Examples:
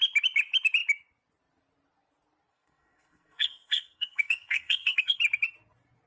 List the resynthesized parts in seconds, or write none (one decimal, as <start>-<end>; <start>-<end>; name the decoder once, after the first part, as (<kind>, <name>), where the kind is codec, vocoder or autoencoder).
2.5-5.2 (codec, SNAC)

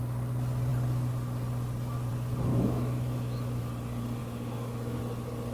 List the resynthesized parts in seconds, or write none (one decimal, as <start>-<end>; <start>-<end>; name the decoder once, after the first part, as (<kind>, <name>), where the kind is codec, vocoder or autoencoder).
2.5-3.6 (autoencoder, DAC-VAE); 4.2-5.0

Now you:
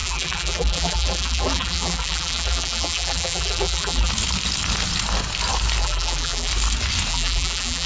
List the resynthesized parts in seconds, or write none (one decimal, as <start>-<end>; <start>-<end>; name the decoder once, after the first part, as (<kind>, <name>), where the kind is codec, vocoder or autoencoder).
0.0-4.1 (vocoder, BigVGAN v2); 5.8-6.5; 7.1-7.9

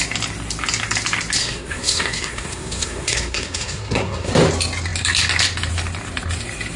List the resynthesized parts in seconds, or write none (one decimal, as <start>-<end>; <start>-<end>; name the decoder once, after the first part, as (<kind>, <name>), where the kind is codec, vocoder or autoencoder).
1.4-4.3 (codec, SNAC)

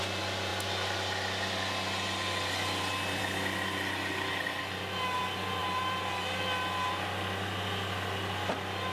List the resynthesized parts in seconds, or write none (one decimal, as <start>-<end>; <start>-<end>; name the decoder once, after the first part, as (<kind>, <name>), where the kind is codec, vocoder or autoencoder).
5.6-6.4 (vocoder, BigVGAN v2)

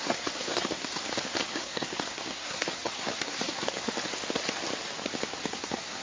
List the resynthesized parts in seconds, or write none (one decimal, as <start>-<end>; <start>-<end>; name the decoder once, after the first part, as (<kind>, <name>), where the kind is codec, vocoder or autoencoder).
0.0-1.0 (codec, SNAC); 1.5-3.9; 5.5-6.0

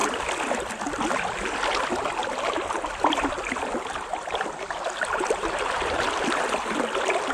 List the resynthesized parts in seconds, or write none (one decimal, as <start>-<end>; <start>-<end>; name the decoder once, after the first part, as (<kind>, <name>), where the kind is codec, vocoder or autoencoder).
none